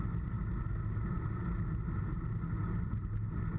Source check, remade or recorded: recorded